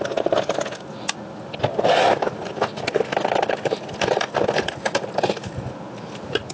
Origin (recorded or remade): recorded